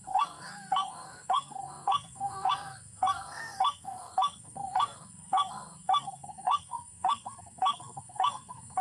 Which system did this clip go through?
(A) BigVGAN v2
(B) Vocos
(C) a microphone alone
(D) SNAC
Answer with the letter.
D